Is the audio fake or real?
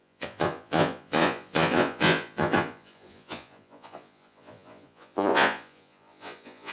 fake